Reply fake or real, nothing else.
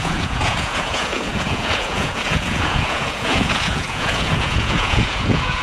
fake